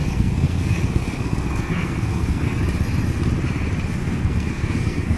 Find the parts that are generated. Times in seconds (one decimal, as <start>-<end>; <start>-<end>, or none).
0.0-2.6; 4.0-5.2